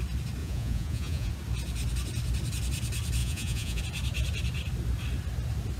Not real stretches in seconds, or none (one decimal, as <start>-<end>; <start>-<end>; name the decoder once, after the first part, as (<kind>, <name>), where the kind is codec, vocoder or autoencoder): 0.4-1.3 (vocoder, Vocos); 3.2-3.8